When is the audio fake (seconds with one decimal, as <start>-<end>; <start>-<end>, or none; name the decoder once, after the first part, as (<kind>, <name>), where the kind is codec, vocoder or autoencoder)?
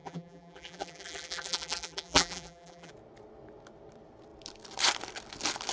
0.0-2.9 (vocoder, BigVGAN v2)